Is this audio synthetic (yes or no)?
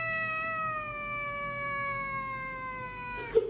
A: no